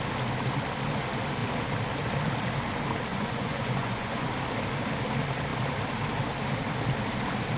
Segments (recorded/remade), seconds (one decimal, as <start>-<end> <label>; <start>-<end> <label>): 0.0-3.1 recorded; 3.1-4.3 remade; 4.3-7.6 recorded